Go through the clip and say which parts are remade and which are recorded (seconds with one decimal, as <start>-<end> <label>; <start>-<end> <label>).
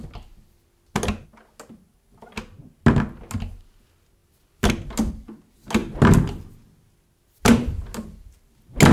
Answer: 0.0-8.9 recorded